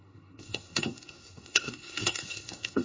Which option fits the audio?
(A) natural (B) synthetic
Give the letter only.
B